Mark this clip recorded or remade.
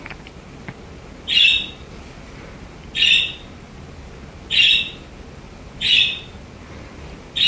recorded